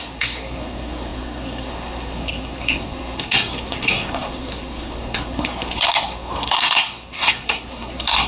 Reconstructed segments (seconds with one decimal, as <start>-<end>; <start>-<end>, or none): 0.0-8.3